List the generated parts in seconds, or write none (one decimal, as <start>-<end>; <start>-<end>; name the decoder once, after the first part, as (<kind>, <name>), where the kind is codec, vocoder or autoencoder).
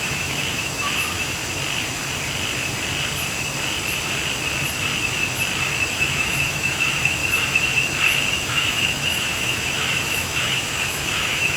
0.0-1.4 (autoencoder, DAC-VAE); 5.9-7.2; 8.3-11.6